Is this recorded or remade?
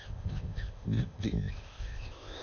remade